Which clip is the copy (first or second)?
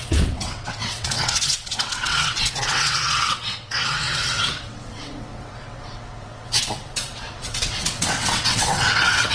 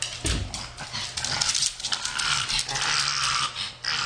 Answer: first